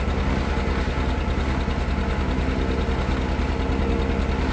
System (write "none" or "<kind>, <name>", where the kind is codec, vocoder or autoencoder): none